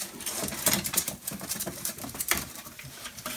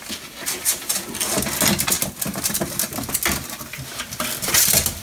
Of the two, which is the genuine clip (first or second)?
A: second